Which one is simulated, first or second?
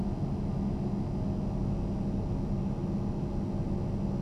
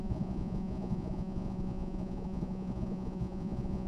second